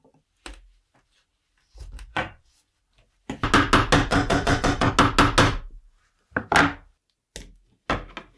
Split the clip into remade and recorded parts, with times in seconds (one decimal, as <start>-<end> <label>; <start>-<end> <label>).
0.0-2.1 recorded; 2.1-2.8 remade; 2.8-4.1 recorded; 4.1-4.9 remade; 4.9-8.4 recorded